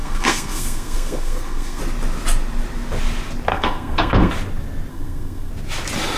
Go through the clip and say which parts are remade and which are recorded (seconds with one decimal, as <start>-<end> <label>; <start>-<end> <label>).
0.0-1.8 remade; 1.8-3.5 recorded; 3.5-4.3 remade; 4.3-4.9 recorded; 4.9-5.5 remade; 5.5-6.2 recorded